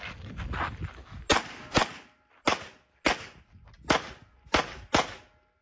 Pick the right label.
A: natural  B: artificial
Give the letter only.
A